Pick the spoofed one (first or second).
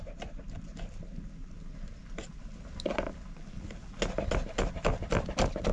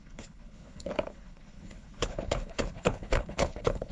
second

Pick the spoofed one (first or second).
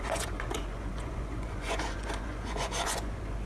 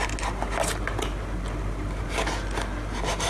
first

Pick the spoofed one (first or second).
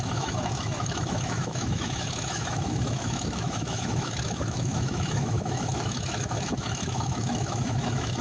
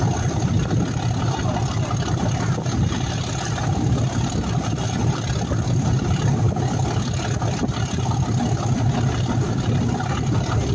first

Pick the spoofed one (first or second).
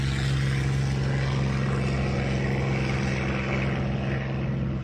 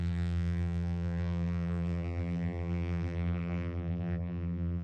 second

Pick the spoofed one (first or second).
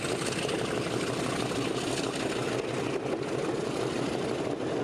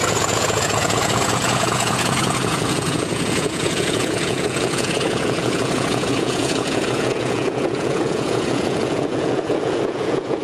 second